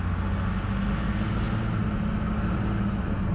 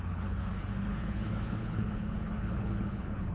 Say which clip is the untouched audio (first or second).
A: first